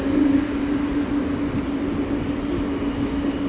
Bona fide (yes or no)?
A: yes